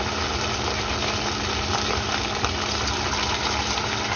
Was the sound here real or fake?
real